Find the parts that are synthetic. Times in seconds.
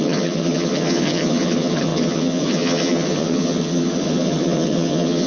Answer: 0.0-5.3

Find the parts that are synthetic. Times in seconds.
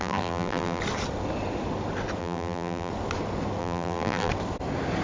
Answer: 0.0-0.8; 2.2-2.9; 3.6-4.3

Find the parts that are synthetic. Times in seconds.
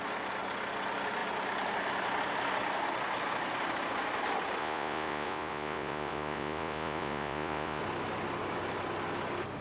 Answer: 4.6-7.8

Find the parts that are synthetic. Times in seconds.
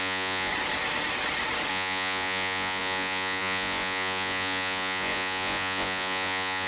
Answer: 0.0-0.5; 1.7-6.7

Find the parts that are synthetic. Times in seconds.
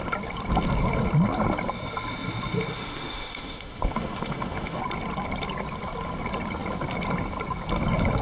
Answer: 2.7-4.8